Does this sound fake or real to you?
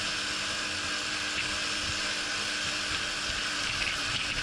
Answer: real